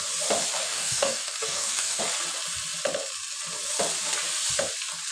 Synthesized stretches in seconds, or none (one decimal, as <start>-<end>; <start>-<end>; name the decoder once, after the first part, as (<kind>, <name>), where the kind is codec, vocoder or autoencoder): 0.6-2.0 (codec, DAC)